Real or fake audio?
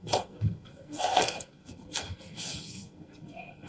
fake